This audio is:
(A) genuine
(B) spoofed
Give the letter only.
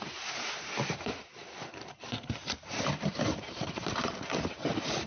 B